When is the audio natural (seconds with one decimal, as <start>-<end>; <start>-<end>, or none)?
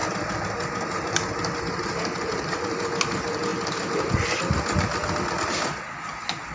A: 0.0-6.5